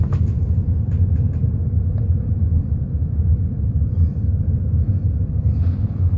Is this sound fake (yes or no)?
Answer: yes